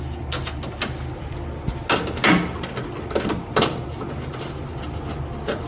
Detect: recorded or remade recorded